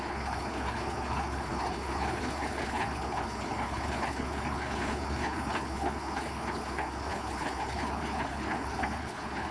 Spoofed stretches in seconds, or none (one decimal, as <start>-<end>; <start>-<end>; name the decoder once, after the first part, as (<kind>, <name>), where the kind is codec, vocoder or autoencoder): 0.0-9.5 (codec, HILCodec)